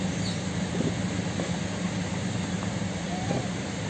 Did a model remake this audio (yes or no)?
no